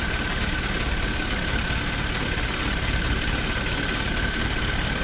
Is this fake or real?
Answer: fake